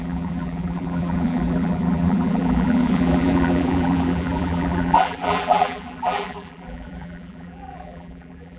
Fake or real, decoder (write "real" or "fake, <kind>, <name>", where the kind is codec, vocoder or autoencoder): fake, vocoder, BigVGAN v2